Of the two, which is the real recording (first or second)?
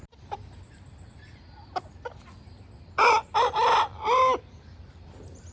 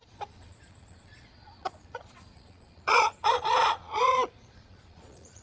first